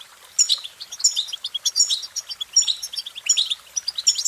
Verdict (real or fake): real